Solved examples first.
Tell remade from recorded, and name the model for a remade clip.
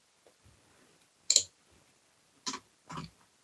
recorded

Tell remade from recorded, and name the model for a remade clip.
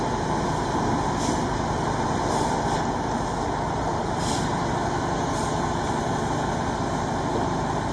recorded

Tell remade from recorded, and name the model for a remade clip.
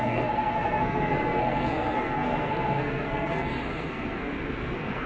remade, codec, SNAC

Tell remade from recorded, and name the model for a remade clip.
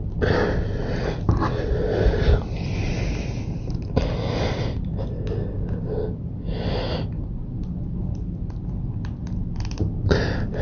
recorded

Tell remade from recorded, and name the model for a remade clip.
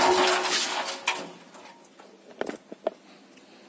recorded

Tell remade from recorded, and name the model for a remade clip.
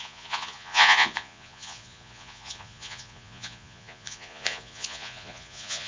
remade, vocoder, Vocos